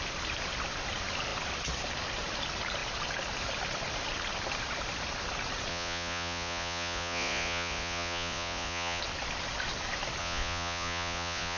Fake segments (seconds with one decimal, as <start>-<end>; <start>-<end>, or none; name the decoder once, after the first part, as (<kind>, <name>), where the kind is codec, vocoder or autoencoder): 5.7-9.0 (vocoder, Vocos); 10.2-11.6